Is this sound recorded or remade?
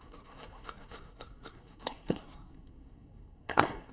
remade